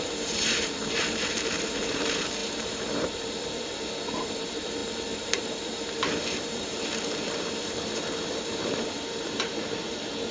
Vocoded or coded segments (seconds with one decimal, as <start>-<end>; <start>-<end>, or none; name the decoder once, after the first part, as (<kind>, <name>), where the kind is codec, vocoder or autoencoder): 0.0-10.3 (vocoder, BigVGAN v2)